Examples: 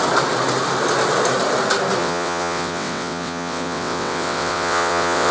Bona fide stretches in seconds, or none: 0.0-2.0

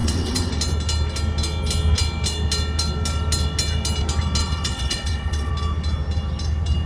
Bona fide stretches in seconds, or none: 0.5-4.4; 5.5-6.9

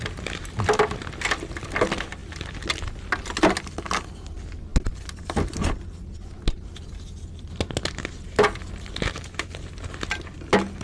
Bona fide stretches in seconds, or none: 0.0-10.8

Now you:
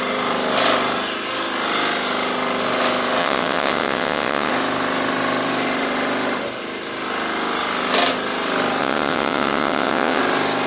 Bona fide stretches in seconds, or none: 0.0-3.2; 4.5-8.8; 10.2-10.7